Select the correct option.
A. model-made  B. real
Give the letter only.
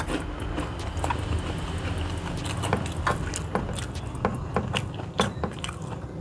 B